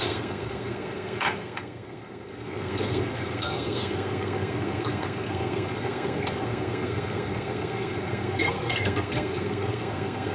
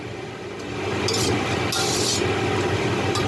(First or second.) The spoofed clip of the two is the first